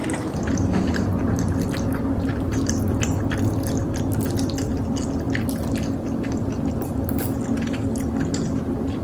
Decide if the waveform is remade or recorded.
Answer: recorded